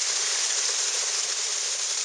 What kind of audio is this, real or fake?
real